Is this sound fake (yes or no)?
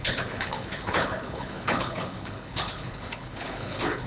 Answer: yes